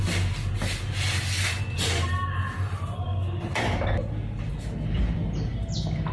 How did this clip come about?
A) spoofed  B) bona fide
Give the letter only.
B